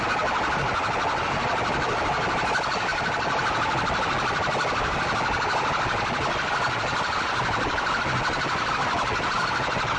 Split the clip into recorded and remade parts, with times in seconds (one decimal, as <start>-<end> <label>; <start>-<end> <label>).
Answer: 0.0-10.0 recorded